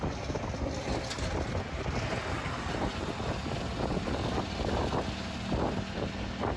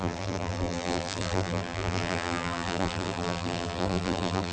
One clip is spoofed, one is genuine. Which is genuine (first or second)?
first